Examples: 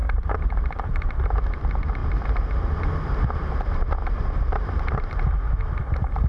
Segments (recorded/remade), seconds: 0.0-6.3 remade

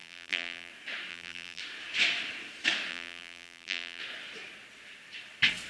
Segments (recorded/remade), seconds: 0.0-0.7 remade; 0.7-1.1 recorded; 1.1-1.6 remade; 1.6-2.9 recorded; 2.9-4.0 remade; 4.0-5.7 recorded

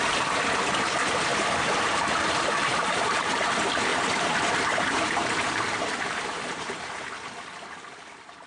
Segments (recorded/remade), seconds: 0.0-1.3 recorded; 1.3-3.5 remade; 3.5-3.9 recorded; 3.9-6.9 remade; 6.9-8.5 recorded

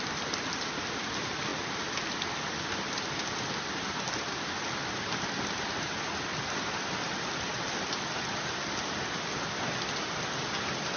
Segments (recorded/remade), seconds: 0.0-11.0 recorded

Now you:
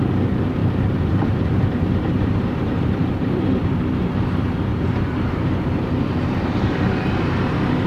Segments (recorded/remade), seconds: 0.0-0.6 recorded; 0.6-3.9 remade; 3.9-4.7 recorded; 4.7-7.0 remade; 7.0-7.9 recorded

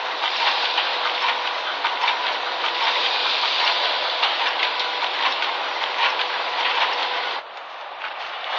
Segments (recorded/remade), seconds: 0.0-0.9 remade; 0.9-6.1 recorded; 6.1-8.6 remade

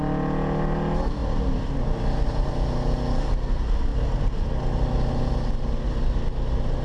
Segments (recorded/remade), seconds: 0.0-1.2 recorded; 1.2-2.5 remade; 2.5-3.9 recorded; 3.9-4.6 remade; 4.6-6.8 recorded

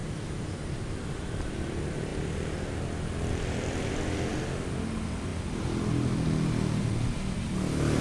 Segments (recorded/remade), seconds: 0.0-2.1 remade; 2.1-3.3 recorded; 3.3-5.3 remade; 5.3-7.4 recorded; 7.4-8.0 remade